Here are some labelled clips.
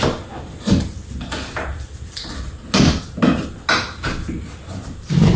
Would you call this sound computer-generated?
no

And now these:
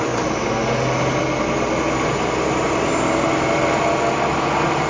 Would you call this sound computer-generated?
no